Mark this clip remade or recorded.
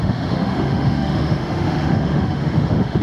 remade